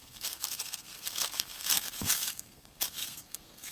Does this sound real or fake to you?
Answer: fake